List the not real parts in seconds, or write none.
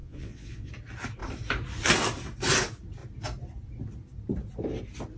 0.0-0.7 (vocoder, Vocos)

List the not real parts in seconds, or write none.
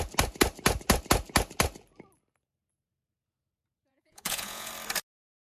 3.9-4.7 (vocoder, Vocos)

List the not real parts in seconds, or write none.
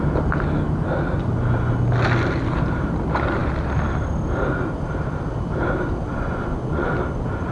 6.1-6.9 (vocoder, Vocos)